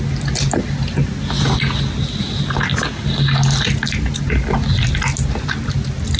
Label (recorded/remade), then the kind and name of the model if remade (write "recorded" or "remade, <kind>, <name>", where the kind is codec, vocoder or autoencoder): recorded